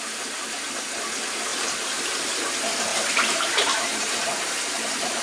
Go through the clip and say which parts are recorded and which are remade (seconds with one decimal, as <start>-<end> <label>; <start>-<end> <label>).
0.0-1.5 recorded; 1.5-2.5 remade; 2.5-2.9 recorded; 2.9-5.2 remade